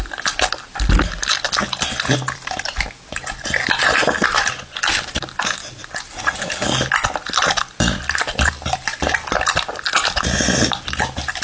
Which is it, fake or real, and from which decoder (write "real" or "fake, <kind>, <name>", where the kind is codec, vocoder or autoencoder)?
real